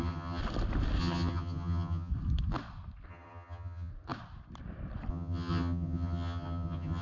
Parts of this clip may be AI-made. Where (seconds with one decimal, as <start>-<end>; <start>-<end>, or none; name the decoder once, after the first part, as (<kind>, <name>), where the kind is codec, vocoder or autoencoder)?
0.0-0.4 (vocoder, HiFi-GAN); 1.0-2.1; 3.1-3.9; 5.1-7.0